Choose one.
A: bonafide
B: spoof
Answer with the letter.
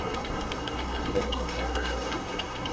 B